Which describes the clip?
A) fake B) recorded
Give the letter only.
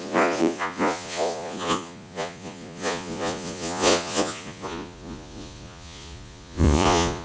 A